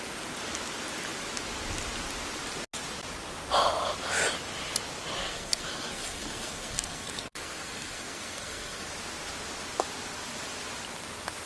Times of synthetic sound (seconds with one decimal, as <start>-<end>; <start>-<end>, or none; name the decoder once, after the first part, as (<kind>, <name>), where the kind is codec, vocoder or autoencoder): 5.2-8.9 (codec, SNAC)